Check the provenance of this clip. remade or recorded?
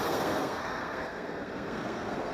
remade